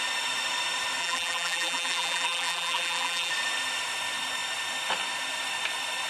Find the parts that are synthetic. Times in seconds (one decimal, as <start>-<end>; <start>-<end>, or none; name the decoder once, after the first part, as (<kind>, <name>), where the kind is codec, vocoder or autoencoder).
1.0-3.3 (vocoder, BigVGAN v2)